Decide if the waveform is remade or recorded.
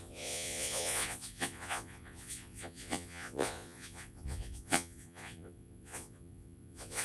remade